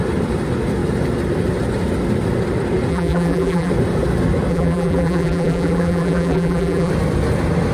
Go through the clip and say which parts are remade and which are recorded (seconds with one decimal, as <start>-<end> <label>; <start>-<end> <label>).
0.0-2.9 recorded; 2.9-3.7 remade; 3.7-4.5 recorded; 4.5-6.9 remade; 6.9-7.7 recorded